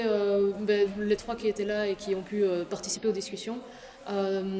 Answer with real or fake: real